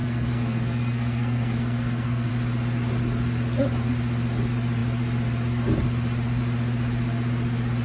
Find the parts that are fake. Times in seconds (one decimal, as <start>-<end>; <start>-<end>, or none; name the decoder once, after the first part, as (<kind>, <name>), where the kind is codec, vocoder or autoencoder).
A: 0.0-2.3 (codec, SNAC)